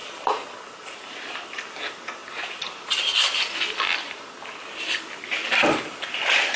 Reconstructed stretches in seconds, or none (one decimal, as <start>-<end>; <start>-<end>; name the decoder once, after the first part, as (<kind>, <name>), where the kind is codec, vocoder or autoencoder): none